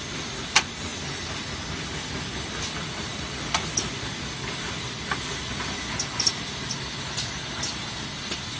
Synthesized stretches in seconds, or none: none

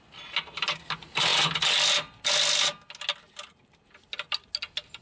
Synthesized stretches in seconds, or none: none

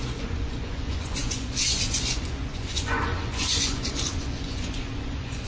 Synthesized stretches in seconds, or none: 0.0-5.5 (vocoder, Vocos)